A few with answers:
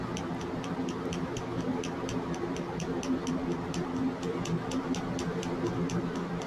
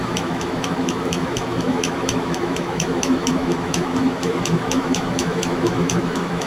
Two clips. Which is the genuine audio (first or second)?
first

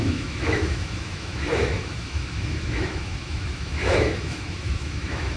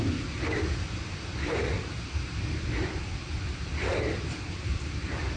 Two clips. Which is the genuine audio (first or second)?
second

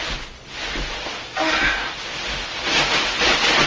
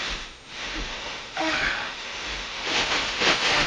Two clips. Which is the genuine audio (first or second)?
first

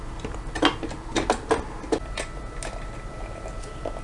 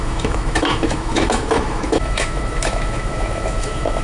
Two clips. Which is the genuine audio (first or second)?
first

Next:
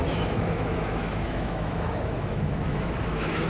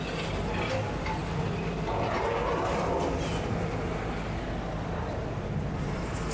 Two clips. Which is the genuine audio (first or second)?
second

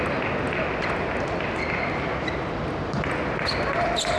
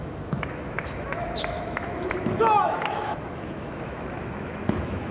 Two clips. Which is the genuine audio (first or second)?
first